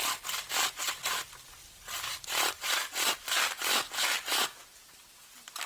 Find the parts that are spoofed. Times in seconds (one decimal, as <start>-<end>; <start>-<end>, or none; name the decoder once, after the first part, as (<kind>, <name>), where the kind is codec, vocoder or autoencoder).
none